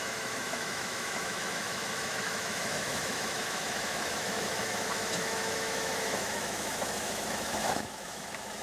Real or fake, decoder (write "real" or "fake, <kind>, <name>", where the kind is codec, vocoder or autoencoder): fake, autoencoder, DAC-VAE